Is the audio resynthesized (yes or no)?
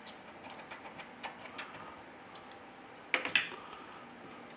no